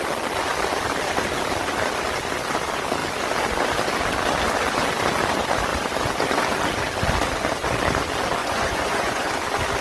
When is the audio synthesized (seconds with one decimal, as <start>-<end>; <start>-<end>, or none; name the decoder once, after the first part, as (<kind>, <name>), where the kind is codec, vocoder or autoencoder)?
8.4-9.3 (vocoder, Vocos)